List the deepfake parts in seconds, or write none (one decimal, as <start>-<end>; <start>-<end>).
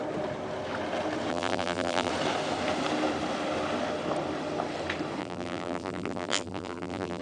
1.3-2.1; 5.2-7.2